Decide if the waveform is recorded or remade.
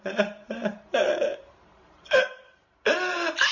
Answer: remade